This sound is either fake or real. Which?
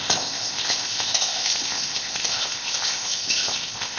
fake